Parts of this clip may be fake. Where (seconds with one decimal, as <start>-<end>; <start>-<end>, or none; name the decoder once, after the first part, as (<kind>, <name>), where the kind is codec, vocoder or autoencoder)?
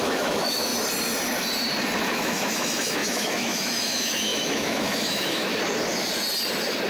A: 0.0-0.7 (autoencoder, DAC-VAE); 2.0-5.5